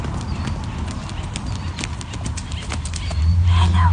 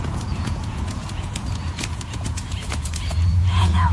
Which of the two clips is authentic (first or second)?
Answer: first